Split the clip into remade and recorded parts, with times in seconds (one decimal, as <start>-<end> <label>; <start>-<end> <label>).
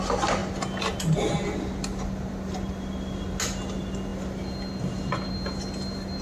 0.0-6.2 recorded